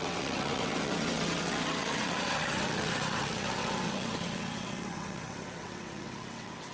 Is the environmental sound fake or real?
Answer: fake